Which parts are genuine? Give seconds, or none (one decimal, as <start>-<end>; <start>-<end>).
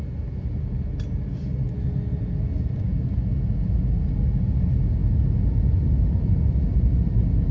0.0-7.5